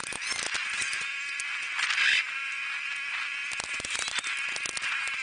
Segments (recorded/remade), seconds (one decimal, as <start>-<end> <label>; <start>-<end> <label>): 0.0-5.2 recorded